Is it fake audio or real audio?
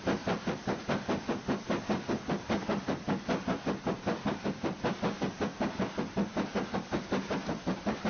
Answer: real